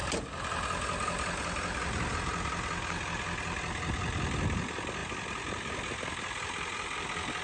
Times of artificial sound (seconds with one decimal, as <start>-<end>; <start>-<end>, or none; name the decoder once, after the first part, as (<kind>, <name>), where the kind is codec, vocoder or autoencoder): none